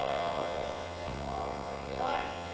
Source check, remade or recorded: remade